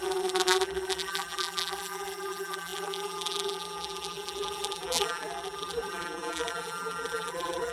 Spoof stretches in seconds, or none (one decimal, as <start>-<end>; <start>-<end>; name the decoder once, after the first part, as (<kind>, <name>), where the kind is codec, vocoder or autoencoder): 0.0-7.7 (vocoder, BigVGAN v2)